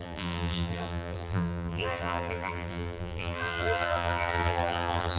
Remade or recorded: remade